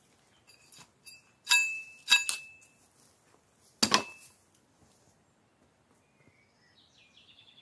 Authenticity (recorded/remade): recorded